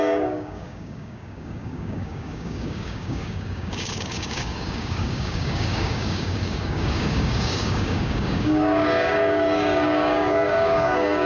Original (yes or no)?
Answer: no